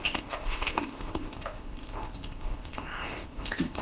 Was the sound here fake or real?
fake